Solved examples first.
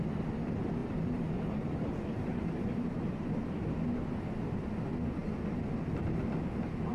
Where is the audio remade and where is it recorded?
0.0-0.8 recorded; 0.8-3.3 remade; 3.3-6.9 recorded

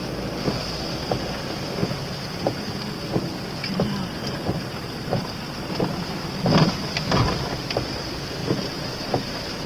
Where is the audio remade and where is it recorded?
0.0-8.4 remade; 8.4-9.2 recorded; 9.2-9.7 remade

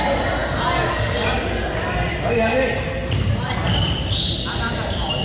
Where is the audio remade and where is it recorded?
0.0-5.2 recorded

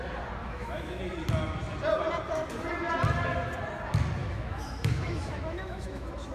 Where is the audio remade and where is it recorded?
0.0-0.4 recorded; 0.4-1.0 remade; 1.0-4.2 recorded; 4.2-6.3 remade